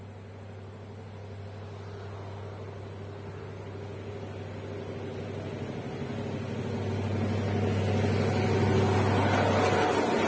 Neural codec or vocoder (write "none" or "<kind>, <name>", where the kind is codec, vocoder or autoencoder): none